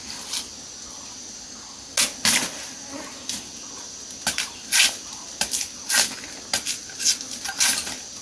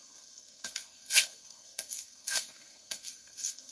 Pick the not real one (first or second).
second